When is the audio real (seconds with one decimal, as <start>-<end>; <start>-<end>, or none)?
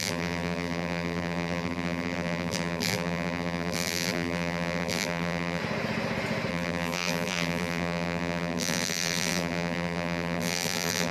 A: 5.6-6.5